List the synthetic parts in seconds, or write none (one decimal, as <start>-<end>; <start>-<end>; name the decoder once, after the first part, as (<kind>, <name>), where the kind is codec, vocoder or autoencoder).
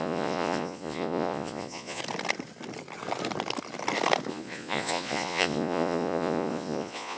0.0-2.0 (vocoder, Vocos); 4.3-7.2